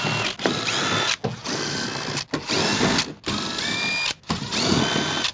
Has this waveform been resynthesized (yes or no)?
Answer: no